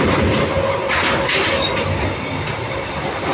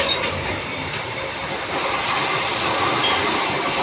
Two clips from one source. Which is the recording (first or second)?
first